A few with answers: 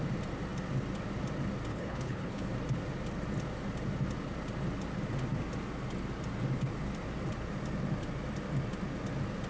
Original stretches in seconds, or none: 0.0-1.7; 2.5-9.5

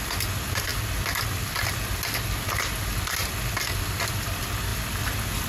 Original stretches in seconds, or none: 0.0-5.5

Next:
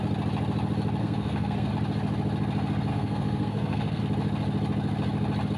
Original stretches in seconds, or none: 0.0-1.0; 1.7-2.9; 4.0-5.6

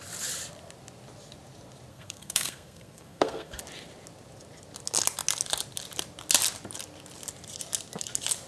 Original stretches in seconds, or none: 0.0-1.9; 3.6-8.5